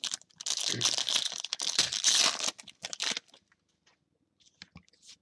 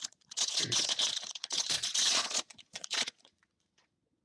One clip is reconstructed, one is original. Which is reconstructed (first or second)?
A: second